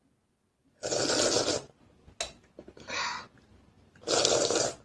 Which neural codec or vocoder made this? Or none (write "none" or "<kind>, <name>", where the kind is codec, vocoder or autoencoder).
none